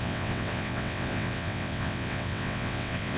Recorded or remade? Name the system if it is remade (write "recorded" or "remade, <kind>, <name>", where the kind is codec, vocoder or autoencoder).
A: remade, vocoder, WaveNeXt